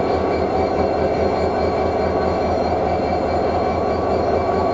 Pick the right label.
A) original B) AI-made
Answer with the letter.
A